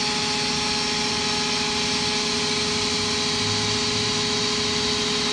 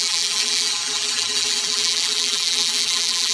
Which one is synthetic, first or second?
second